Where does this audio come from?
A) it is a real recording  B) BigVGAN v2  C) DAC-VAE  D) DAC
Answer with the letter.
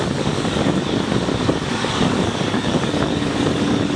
D